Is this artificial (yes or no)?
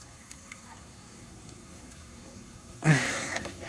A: yes